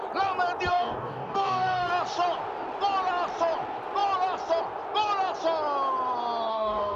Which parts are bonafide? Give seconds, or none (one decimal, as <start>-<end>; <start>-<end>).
0.0-0.7; 1.9-6.5